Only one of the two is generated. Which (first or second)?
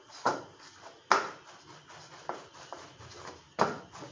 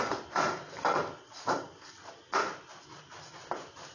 second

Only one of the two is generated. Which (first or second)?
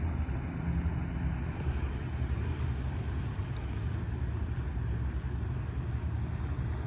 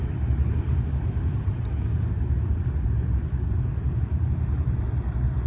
second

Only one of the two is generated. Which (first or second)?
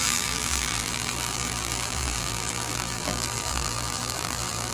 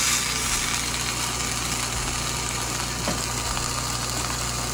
first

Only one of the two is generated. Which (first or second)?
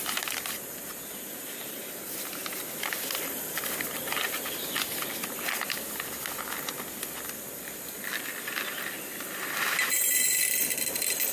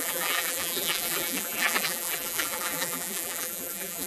second